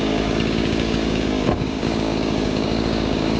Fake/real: fake